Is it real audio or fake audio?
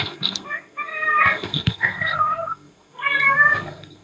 fake